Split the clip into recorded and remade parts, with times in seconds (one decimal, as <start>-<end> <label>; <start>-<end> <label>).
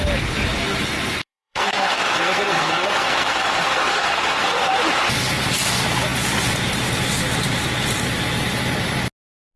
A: 0.0-1.2 recorded; 1.2-4.7 remade; 4.7-9.6 recorded